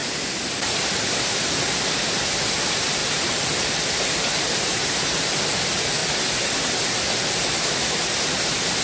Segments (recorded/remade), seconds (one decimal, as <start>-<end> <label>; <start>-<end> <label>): 0.0-1.6 remade; 1.6-3.0 recorded; 3.0-4.3 remade; 4.3-4.7 recorded; 4.7-5.2 remade; 5.2-8.8 recorded